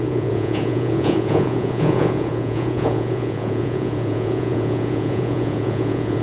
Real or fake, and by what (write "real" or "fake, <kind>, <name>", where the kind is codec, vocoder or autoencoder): fake, vocoder, Vocos